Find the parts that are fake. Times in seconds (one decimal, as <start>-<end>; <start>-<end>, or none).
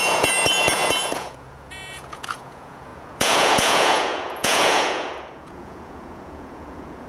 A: 0.0-7.1